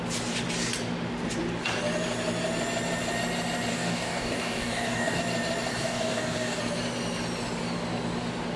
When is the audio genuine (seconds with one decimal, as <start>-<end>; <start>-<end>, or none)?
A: 0.0-3.7; 5.2-5.7; 6.6-8.6